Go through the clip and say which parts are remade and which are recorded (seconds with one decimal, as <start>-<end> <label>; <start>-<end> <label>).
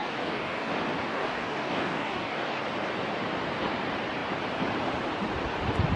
0.0-0.7 remade; 0.7-1.1 recorded; 1.1-2.6 remade; 2.6-6.0 recorded